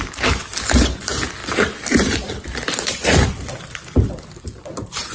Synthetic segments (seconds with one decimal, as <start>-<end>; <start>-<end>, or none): 1.4-4.5